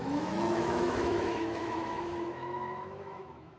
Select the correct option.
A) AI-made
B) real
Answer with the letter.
A